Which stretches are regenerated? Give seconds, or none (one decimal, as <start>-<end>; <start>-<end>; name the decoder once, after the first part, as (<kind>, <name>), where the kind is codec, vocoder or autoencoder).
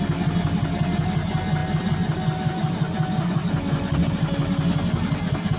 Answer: none